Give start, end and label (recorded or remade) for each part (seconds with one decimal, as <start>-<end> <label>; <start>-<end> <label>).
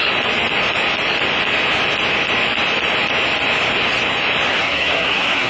0.0-4.5 recorded; 4.5-5.5 remade